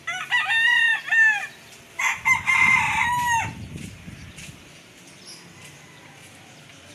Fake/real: real